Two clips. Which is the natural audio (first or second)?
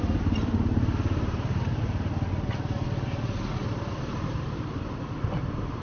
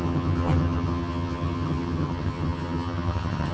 first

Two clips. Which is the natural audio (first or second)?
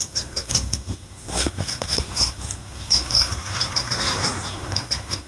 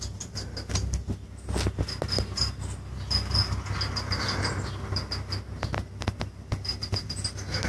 second